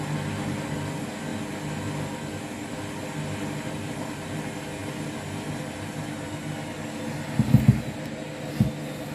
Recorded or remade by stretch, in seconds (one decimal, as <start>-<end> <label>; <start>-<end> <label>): 0.0-9.1 recorded